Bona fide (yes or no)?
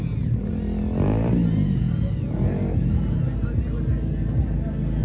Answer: yes